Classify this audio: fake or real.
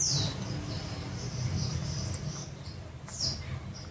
real